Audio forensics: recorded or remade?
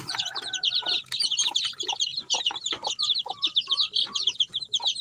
recorded